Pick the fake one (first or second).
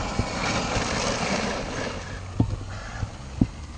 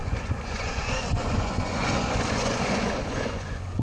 second